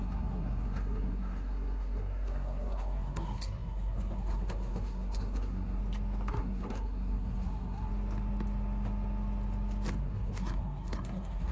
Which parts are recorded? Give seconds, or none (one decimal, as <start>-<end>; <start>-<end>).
5.8-6.3; 7.9-10.0